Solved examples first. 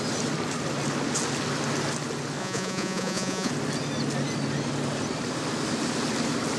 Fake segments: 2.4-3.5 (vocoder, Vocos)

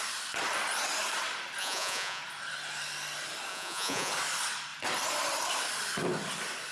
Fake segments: 1.6-2.2 (vocoder, Vocos); 3.5-4.1

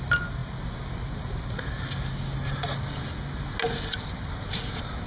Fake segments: none